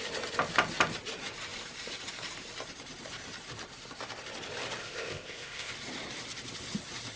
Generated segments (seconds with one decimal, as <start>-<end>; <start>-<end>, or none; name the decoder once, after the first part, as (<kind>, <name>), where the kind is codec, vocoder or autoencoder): 4.8-5.7 (codec, ZipCodec)